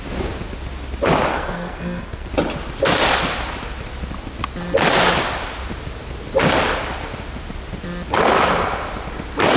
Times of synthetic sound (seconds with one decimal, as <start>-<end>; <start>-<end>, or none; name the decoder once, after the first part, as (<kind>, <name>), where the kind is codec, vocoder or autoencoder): 1.3-2.3 (codec, SNAC)